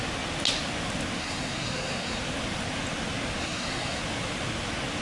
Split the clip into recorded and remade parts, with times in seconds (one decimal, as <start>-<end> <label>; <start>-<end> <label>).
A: 0.0-1.2 recorded; 1.2-2.2 remade; 2.2-3.4 recorded; 3.4-4.0 remade; 4.0-5.0 recorded